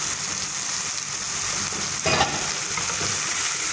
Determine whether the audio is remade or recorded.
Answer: recorded